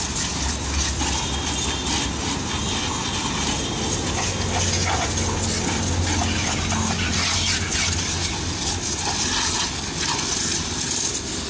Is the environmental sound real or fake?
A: real